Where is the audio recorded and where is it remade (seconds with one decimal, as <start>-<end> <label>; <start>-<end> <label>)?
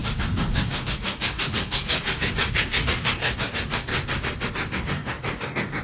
0.0-3.9 remade; 3.9-4.5 recorded; 4.5-5.8 remade